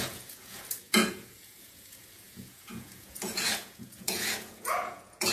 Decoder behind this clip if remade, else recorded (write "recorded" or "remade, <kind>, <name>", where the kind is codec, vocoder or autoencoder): remade, vocoder, Vocos